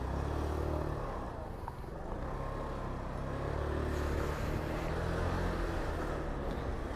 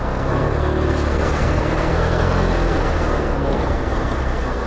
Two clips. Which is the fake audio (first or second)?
second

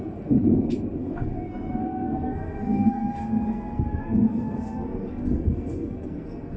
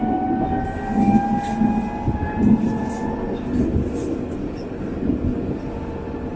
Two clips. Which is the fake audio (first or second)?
first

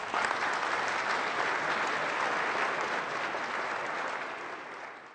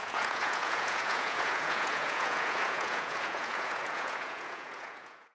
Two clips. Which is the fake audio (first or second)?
second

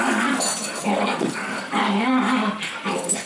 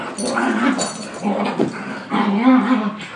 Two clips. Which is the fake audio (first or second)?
first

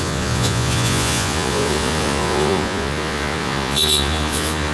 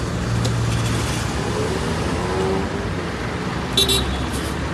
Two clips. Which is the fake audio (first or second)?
first